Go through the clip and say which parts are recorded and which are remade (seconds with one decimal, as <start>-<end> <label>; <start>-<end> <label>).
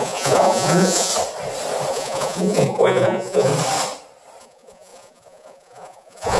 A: 0.0-1.1 remade; 1.1-1.9 recorded; 1.9-3.5 remade; 3.5-4.4 recorded; 4.4-6.4 remade